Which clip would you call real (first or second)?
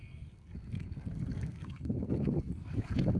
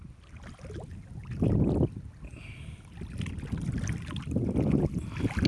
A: second